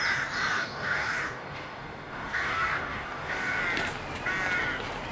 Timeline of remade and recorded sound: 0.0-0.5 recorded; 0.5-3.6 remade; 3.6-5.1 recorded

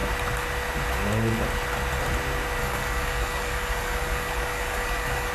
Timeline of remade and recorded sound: 0.0-2.6 recorded; 2.6-5.3 remade

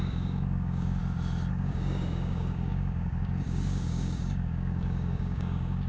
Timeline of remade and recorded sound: 0.0-1.0 remade; 1.0-1.5 recorded; 1.5-5.9 remade

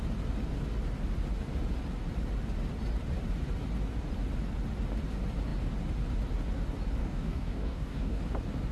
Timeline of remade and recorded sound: 0.0-7.0 recorded; 7.0-8.2 remade; 8.2-8.7 recorded

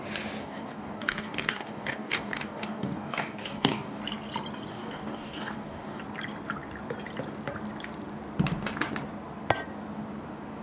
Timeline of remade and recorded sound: 0.0-0.4 recorded; 0.4-4.0 remade; 4.0-4.7 recorded; 4.7-6.0 remade; 6.0-10.6 recorded

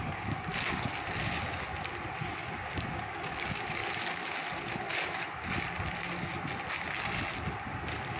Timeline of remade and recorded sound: 0.0-0.5 remade; 0.5-3.0 recorded; 3.0-3.8 remade; 3.8-8.2 recorded